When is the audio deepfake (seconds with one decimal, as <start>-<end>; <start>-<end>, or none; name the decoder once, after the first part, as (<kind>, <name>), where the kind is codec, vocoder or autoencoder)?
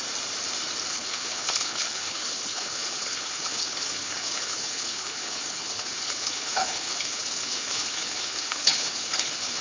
0.9-9.6 (codec, HILCodec)